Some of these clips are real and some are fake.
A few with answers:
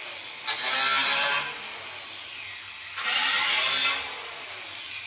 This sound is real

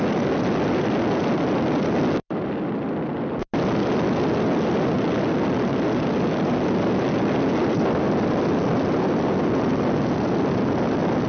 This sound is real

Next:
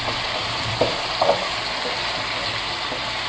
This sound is real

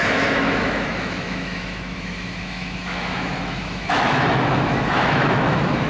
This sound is fake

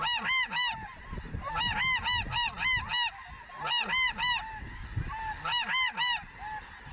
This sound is real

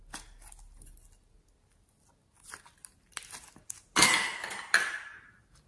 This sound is real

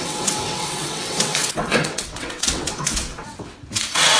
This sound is fake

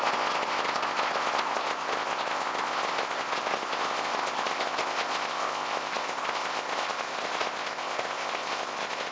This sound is fake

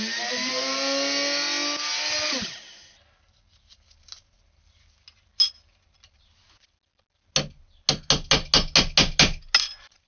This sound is real